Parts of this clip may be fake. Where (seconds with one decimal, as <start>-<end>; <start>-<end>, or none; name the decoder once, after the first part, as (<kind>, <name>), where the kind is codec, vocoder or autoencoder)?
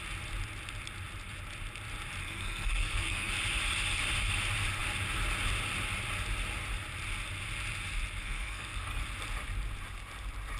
2.2-3.3 (codec, SNAC); 8.2-9.0